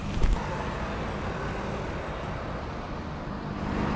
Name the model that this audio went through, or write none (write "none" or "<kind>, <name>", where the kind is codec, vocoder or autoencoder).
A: none